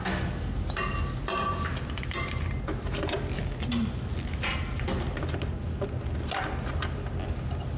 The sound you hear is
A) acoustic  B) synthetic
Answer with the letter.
A